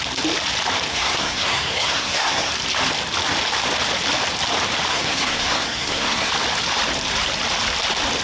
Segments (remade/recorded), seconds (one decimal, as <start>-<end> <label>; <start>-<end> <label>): 0.0-0.9 recorded; 0.9-2.5 remade; 2.5-4.9 recorded; 4.9-6.3 remade; 6.3-8.2 recorded

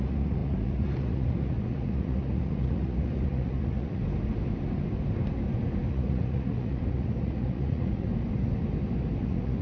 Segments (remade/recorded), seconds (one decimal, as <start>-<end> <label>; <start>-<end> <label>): 0.0-4.0 remade; 4.0-5.9 recorded; 5.9-8.1 remade; 8.1-9.2 recorded; 9.2-9.6 remade

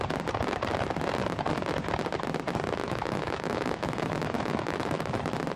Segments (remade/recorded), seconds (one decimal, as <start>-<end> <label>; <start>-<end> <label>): 0.0-2.8 recorded; 2.8-5.1 remade; 5.1-5.6 recorded

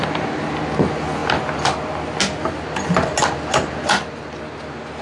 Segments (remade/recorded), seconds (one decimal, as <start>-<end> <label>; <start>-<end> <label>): 0.0-5.0 recorded

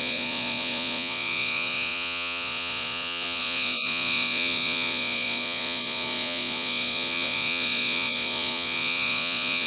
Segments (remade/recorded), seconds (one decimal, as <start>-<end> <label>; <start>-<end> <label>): 0.0-9.7 remade

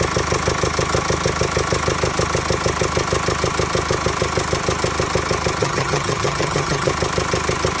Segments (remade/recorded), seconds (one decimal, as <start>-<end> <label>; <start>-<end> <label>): 0.0-5.6 recorded; 5.6-6.9 remade; 6.9-7.8 recorded